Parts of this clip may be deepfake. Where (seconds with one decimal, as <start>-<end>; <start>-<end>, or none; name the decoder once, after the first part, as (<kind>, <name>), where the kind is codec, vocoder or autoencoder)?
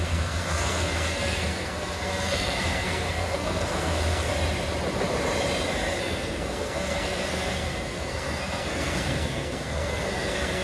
0.0-4.3 (codec, SNAC); 6.0-10.6